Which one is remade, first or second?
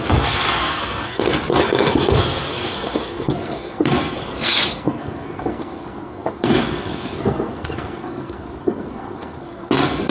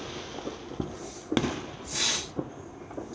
first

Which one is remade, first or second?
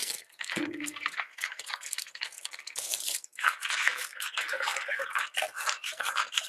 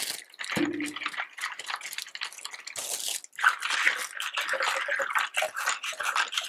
first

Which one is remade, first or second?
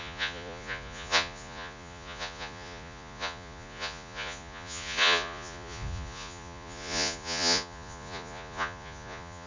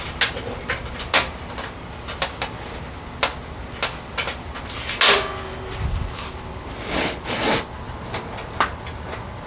first